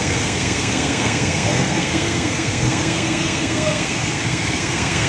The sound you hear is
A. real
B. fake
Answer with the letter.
B